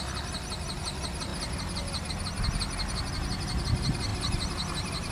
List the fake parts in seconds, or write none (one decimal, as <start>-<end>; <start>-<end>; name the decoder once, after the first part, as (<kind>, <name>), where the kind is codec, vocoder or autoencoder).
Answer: none